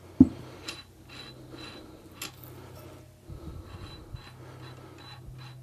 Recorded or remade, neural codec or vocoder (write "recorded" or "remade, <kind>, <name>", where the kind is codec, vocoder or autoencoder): recorded